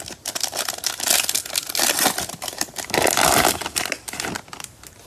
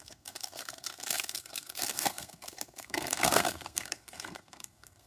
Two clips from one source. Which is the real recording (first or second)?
first